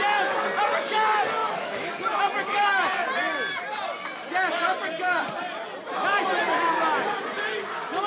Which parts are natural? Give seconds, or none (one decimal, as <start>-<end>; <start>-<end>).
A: 0.0-1.4; 1.9-8.1